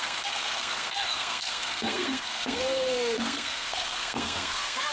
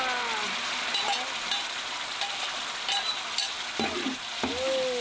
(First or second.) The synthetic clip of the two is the first